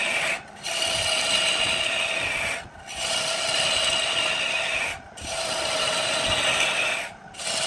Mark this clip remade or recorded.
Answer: recorded